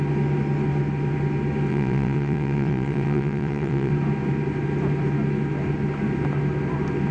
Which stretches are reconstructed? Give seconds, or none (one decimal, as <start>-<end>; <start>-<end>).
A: 1.7-3.9